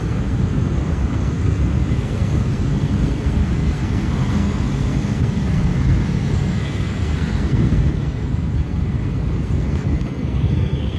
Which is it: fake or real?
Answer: fake